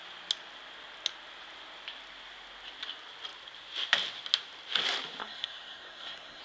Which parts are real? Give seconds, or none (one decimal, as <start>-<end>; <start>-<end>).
0.0-5.2